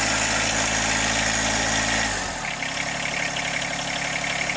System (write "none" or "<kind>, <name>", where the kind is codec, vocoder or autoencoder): none